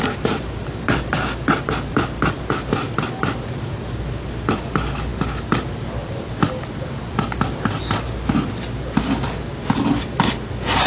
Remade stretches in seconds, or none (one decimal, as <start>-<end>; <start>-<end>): none